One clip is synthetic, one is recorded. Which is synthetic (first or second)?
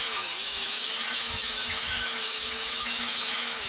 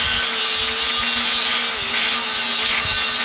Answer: first